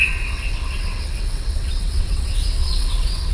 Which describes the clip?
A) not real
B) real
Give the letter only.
A